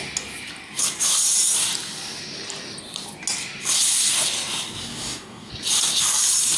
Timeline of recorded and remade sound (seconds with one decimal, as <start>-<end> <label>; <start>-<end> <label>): 0.0-4.9 recorded; 4.9-5.5 remade; 5.5-6.6 recorded